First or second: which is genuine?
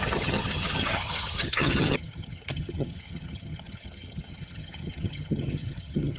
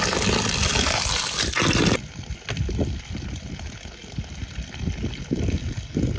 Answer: second